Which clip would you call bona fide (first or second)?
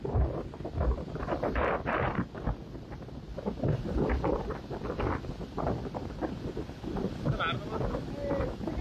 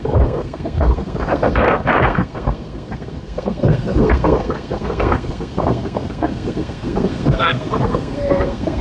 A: first